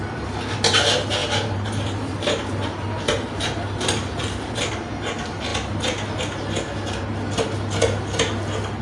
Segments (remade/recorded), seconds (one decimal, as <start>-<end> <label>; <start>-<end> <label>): 0.0-1.2 recorded; 1.2-4.7 remade; 4.7-8.8 recorded